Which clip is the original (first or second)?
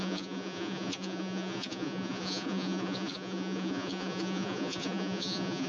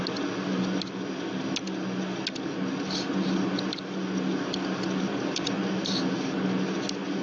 second